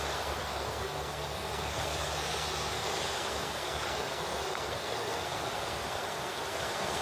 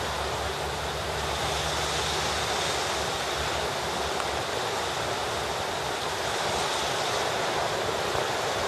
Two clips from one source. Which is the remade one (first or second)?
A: first